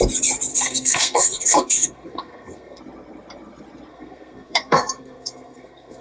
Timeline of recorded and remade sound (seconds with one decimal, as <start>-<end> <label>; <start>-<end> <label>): 0.0-0.5 recorded; 0.5-2.8 remade; 2.8-3.9 recorded; 3.9-6.0 remade